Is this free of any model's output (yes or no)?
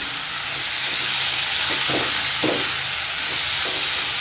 yes